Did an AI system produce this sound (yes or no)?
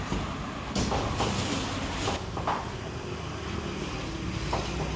no